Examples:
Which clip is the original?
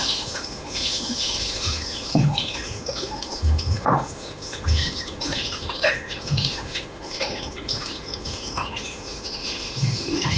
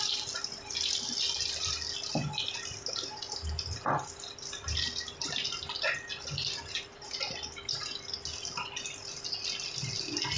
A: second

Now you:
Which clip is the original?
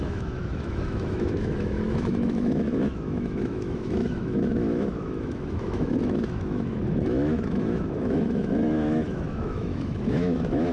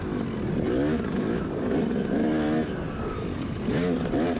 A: second